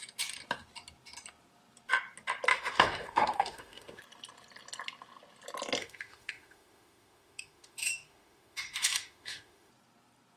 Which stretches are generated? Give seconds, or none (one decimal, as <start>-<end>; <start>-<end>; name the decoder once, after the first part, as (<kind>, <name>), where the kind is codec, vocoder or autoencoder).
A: 2.5-4.0 (autoencoder, DAC-VAE); 5.8-9.7